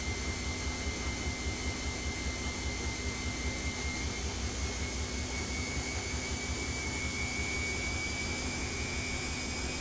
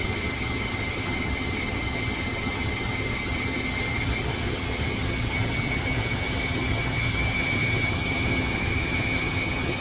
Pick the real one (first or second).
first